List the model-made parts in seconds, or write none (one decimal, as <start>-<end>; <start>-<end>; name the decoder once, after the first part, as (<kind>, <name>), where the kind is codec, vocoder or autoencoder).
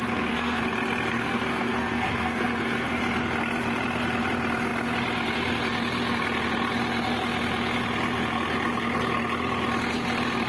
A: 0.0-0.6 (codec, SNAC); 1.1-3.0